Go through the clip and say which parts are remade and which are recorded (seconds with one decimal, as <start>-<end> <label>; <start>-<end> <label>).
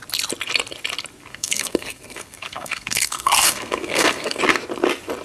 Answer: 0.0-1.3 recorded; 1.3-4.4 remade; 4.4-5.2 recorded